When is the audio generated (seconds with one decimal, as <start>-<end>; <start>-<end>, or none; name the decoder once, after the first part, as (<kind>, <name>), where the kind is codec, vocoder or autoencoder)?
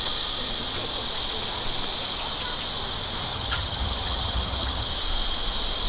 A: 3.3-4.9 (vocoder, HiFi-GAN)